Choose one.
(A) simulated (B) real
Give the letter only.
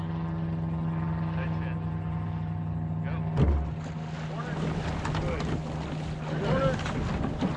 B